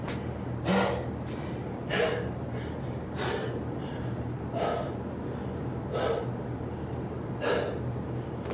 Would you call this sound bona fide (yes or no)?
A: yes